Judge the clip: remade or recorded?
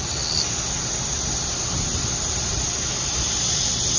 recorded